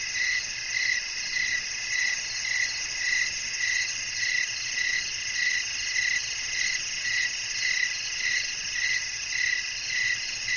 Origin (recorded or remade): recorded